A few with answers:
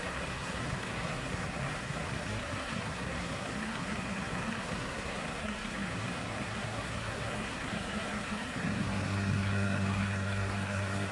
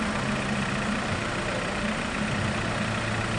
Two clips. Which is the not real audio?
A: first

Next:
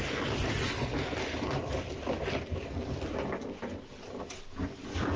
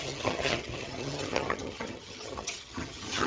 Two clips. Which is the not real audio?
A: second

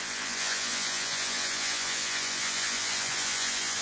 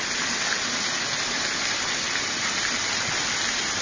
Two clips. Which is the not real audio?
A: first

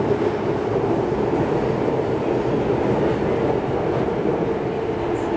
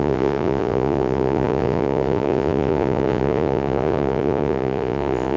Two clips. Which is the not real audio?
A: second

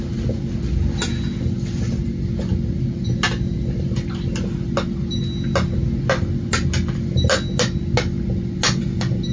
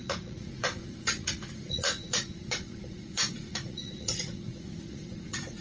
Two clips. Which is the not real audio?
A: second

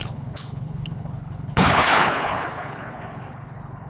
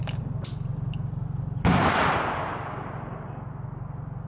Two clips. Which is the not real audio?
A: first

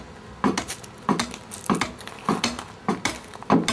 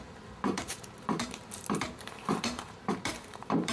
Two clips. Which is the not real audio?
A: second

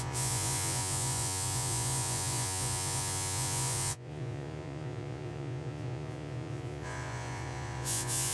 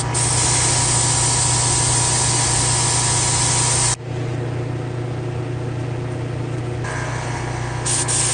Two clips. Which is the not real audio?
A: first